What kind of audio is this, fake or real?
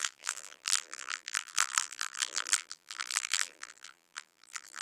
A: fake